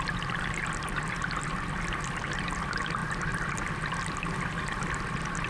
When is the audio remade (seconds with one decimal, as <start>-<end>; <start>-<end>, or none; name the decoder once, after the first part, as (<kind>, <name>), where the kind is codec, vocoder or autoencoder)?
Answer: none